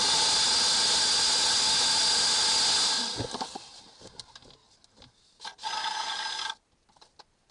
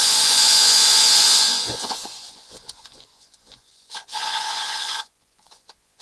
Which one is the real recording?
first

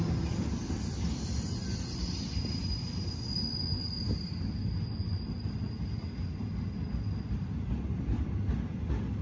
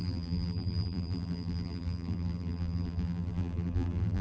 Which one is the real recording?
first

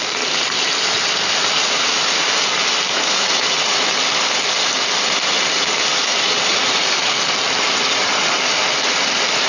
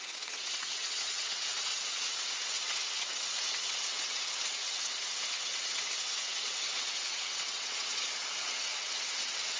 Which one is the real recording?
first